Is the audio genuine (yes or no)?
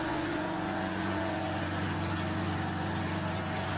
no